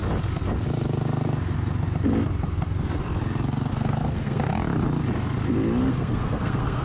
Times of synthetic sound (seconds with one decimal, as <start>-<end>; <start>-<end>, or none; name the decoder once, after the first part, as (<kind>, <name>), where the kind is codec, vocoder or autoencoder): 3.7-4.5 (codec, SNAC); 5.9-6.8